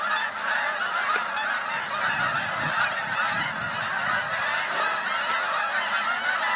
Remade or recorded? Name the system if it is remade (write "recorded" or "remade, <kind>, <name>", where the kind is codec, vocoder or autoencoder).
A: recorded